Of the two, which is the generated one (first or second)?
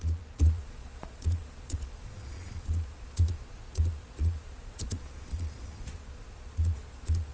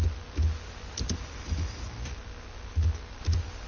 first